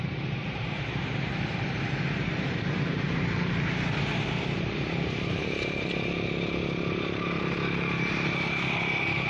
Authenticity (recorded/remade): remade